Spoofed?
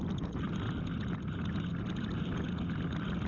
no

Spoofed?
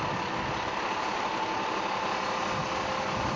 no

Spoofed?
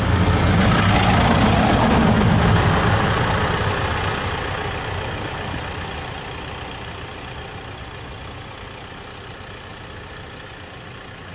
no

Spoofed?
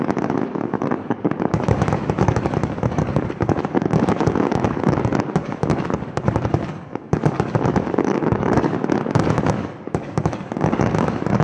yes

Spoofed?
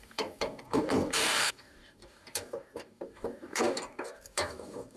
yes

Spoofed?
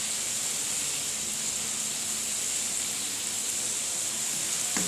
no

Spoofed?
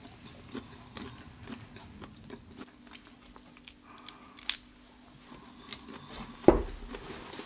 no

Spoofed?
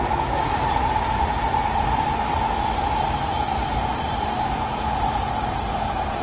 no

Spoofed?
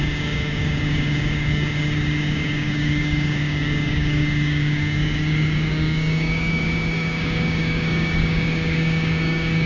yes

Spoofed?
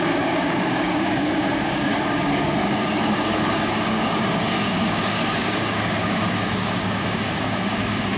yes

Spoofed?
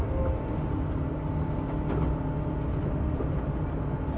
no